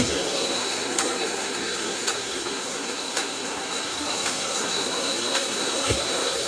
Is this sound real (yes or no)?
no